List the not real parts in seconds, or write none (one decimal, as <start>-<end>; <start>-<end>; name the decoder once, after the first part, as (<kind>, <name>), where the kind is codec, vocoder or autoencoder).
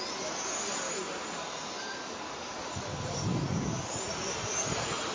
none